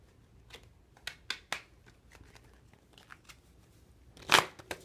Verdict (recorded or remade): recorded